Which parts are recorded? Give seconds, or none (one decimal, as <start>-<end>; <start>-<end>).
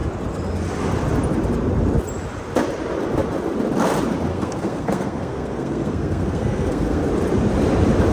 0.0-4.3; 7.1-8.1